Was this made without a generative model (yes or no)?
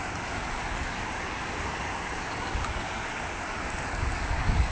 no